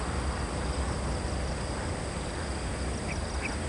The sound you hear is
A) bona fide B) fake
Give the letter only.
A